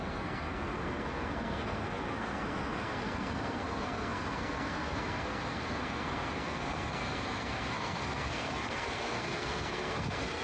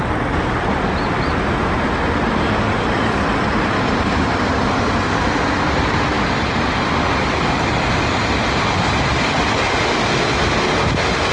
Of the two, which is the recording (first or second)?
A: second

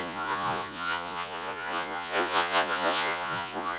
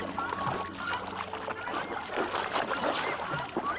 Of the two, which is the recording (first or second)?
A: second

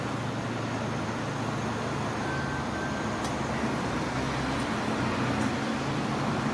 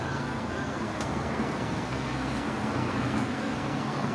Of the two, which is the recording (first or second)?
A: first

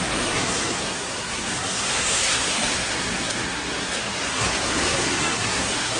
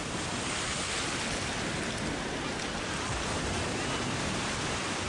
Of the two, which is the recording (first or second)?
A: second